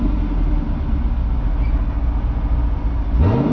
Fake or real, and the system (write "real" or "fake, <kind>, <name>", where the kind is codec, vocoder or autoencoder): real